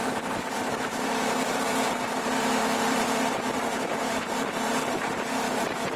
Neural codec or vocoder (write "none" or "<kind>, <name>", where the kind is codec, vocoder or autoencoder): vocoder, BigVGAN v2